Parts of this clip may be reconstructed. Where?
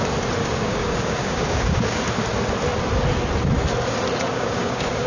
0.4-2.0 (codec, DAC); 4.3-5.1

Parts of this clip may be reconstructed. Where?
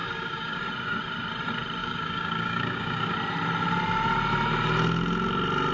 0.0-0.6 (codec, DAC); 1.8-3.1